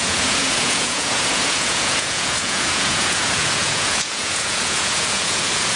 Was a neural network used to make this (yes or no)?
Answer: yes